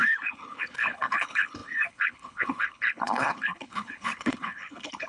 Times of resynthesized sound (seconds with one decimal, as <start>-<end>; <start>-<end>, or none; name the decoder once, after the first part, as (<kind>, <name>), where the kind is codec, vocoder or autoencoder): 0.0-5.1 (codec, HILCodec)